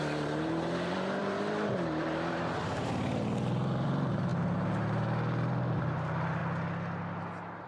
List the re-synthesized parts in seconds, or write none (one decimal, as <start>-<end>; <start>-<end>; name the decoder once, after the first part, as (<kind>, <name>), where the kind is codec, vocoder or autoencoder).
0.0-6.4 (vocoder, BigVGAN v2)